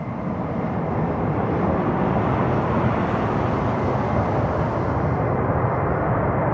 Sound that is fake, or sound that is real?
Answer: real